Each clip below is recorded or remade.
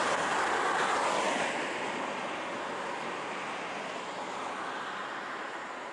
recorded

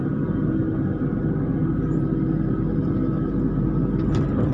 recorded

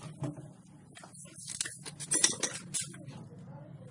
recorded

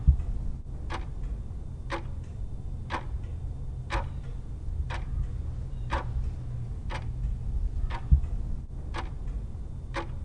recorded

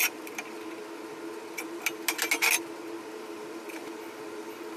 recorded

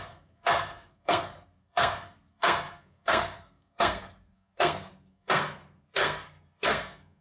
remade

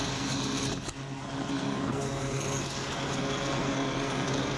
remade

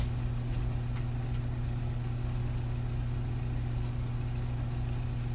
recorded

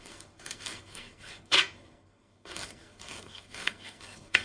remade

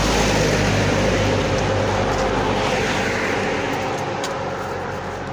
recorded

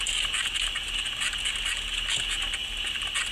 recorded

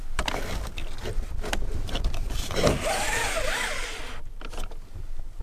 recorded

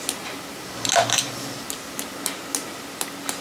recorded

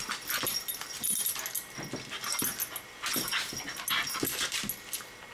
recorded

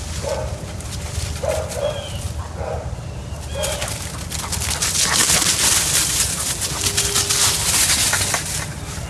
recorded